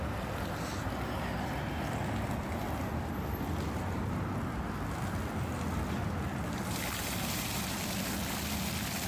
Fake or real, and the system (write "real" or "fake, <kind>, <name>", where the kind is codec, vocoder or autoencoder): real